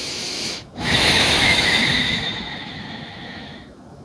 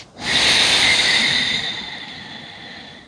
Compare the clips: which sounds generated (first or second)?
first